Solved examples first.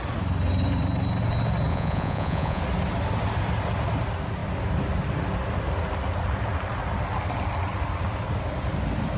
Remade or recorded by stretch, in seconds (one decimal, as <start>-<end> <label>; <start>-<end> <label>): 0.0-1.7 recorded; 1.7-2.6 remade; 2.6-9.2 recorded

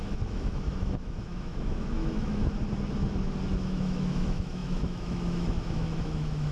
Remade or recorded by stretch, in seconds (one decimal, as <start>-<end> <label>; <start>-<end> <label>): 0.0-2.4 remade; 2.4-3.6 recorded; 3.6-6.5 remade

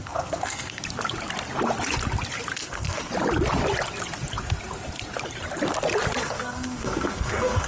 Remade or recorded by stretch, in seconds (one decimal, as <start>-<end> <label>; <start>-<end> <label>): 0.0-0.8 remade; 0.8-2.6 recorded; 2.6-3.1 remade; 3.1-6.2 recorded; 6.2-7.7 remade

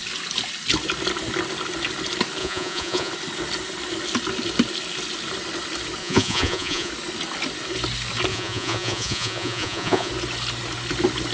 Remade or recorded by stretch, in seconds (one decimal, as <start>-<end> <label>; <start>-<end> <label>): 0.0-2.4 recorded; 2.4-3.1 remade; 3.1-6.0 recorded; 6.0-6.9 remade; 6.9-8.3 recorded; 8.3-10.1 remade; 10.1-11.3 recorded

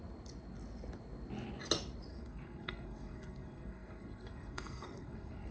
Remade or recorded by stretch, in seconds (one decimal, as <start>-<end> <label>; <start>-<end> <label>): 0.0-2.1 recorded; 2.1-5.5 remade

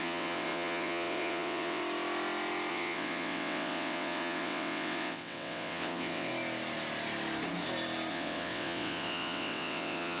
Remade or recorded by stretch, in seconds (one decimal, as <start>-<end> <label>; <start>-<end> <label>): 0.0-1.8 remade; 1.8-2.7 recorded; 2.7-6.3 remade; 6.3-8.1 recorded; 8.1-10.2 remade

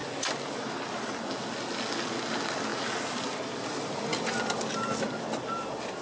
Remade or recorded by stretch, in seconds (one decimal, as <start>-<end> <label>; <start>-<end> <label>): 0.0-1.2 remade; 1.2-4.1 recorded; 4.1-4.8 remade; 4.8-6.0 recorded